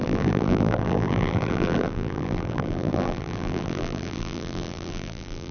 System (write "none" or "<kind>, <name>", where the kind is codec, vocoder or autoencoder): vocoder, BigVGAN v2